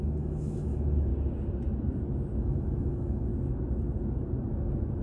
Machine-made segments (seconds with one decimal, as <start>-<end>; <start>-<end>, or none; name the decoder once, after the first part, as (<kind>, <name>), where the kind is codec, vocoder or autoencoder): 0.0-1.1 (autoencoder, DAC-VAE); 2.4-3.3